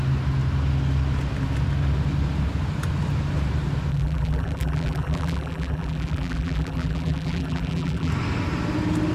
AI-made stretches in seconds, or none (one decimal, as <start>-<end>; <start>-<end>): 3.9-8.1

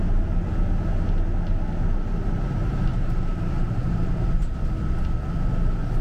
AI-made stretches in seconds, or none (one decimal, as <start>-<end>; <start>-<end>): 2.9-4.3

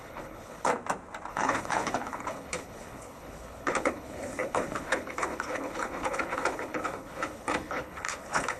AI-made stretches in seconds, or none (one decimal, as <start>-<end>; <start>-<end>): 0.0-0.7; 1.3-8.6

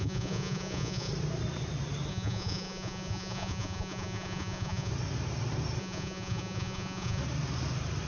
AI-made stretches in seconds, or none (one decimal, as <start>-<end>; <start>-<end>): 0.0-1.1; 2.1-4.9; 5.8-7.2

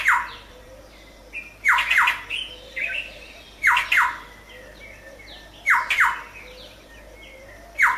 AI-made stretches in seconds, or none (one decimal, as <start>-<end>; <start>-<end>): 0.0-1.2; 2.7-3.8

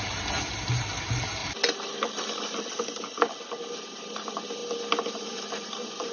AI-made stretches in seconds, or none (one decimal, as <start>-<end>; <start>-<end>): 0.0-1.4; 3.7-4.6; 5.1-6.1

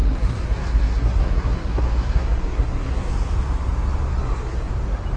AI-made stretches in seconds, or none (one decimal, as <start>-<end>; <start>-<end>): 0.0-3.1; 4.1-4.7